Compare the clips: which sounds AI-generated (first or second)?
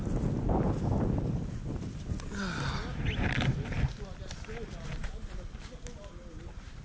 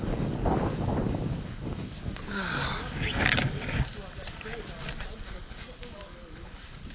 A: second